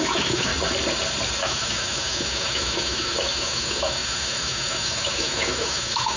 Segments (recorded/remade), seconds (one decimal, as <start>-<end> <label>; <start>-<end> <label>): 0.0-0.5 remade; 0.5-1.4 recorded; 1.4-6.2 remade